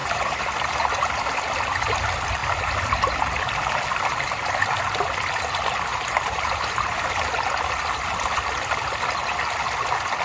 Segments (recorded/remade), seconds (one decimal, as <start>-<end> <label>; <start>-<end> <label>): 0.0-1.1 remade; 1.1-2.4 recorded; 2.4-3.0 remade; 3.0-5.9 recorded; 5.9-7.1 remade; 7.1-10.2 recorded